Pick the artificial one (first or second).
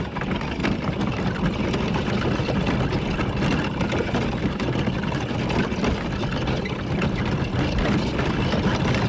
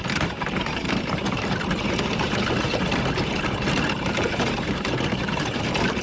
second